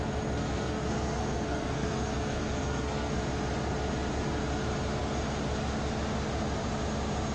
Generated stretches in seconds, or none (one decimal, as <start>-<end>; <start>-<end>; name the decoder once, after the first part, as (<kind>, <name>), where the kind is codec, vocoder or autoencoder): 0.4-3.2 (codec, SNAC)